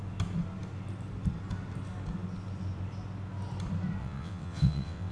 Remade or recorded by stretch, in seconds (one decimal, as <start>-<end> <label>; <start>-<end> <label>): 0.0-4.0 recorded; 4.0-5.1 remade